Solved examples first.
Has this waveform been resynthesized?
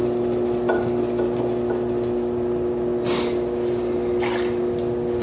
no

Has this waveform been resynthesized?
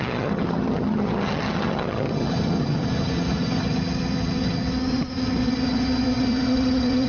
yes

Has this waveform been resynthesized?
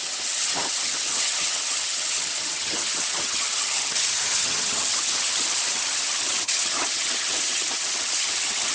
yes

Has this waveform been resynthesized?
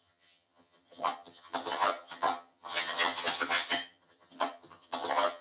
yes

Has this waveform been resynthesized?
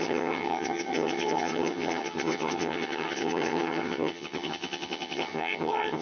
yes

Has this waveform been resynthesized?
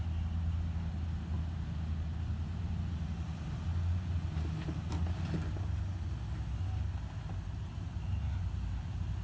no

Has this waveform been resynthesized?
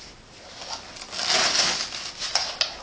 no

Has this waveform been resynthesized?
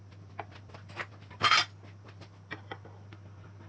no